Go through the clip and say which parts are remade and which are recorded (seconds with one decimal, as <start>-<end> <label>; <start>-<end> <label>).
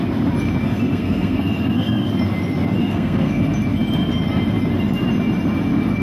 0.0-0.6 recorded; 0.6-2.1 remade; 2.1-2.8 recorded; 2.8-3.4 remade; 3.4-6.0 recorded